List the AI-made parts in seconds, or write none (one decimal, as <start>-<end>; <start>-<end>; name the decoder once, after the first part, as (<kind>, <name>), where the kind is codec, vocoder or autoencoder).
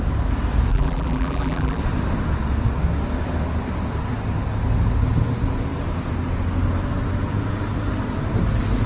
0.7-1.8 (vocoder, BigVGAN v2)